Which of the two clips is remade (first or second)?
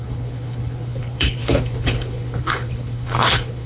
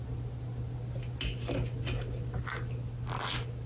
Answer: first